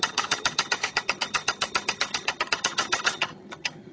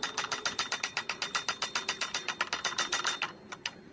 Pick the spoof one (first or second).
first